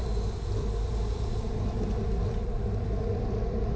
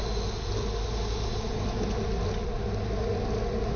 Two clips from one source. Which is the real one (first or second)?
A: second